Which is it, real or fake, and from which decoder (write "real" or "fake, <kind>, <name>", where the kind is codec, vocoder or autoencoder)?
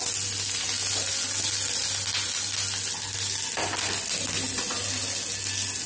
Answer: real